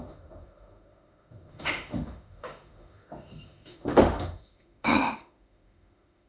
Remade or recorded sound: remade